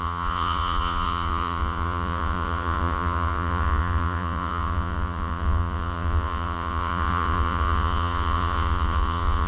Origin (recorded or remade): remade